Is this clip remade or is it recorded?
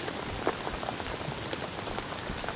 recorded